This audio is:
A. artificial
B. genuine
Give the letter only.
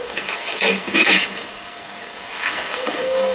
A